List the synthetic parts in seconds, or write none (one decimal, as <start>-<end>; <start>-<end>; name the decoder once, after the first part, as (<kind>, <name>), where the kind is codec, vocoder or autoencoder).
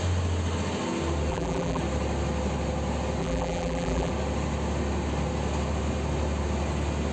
1.3-1.8 (vocoder, BigVGAN v2); 3.2-4.1